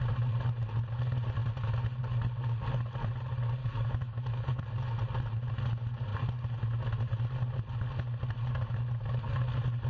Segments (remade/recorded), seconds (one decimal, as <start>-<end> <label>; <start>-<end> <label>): 0.0-3.6 recorded; 3.6-4.6 remade; 4.6-9.9 recorded

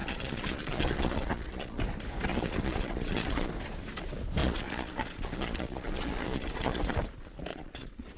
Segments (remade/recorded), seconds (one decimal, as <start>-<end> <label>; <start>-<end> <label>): 0.0-1.8 remade; 1.8-2.3 recorded; 2.3-3.5 remade; 3.5-4.4 recorded; 4.4-7.0 remade; 7.0-7.5 recorded; 7.5-8.2 remade

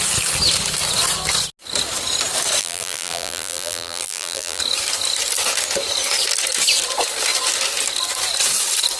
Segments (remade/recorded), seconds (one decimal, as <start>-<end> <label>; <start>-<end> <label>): 0.0-2.6 recorded; 2.6-4.6 remade; 4.6-9.0 recorded

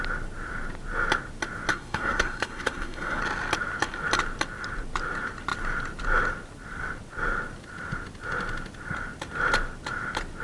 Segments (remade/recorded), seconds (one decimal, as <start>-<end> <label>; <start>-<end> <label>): 0.0-1.7 recorded; 1.7-3.2 remade; 3.2-10.4 recorded